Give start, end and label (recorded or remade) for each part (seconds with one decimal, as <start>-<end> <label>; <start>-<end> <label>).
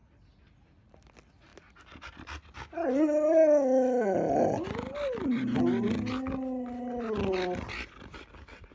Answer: 0.0-8.7 recorded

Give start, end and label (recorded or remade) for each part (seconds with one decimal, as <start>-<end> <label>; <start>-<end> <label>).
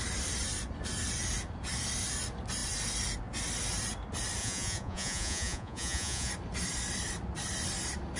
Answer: 0.0-4.4 recorded; 4.4-6.3 remade; 6.3-8.2 recorded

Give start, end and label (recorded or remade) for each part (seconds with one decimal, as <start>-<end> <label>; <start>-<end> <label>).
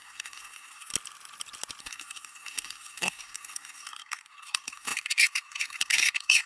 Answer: 0.0-0.9 remade; 0.9-1.8 recorded; 1.8-6.5 remade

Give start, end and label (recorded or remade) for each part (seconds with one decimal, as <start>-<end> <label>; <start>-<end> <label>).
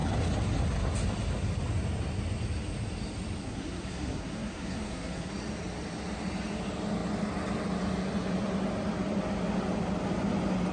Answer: 0.0-3.4 recorded; 3.4-5.3 remade; 5.3-10.7 recorded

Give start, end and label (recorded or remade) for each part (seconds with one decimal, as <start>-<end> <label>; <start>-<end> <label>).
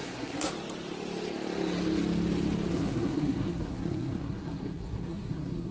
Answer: 0.0-0.5 remade; 0.5-2.7 recorded; 2.7-5.7 remade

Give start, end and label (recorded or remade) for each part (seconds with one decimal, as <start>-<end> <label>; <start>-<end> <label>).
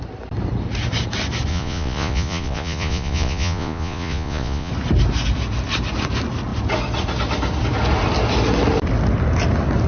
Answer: 0.0-1.5 recorded; 1.5-4.7 remade; 4.7-9.9 recorded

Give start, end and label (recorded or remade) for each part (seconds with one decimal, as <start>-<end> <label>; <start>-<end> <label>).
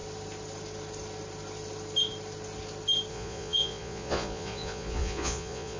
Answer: 0.0-3.1 recorded; 3.1-5.8 remade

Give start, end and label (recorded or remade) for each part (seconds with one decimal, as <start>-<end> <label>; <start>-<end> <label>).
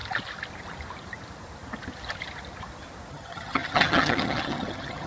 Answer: 0.0-3.1 recorded; 3.1-5.1 remade